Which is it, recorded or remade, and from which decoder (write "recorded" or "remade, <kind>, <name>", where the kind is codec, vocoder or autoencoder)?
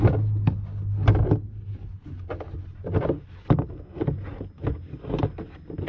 recorded